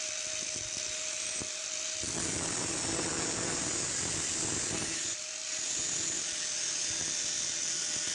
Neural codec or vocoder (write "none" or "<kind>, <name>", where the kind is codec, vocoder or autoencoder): none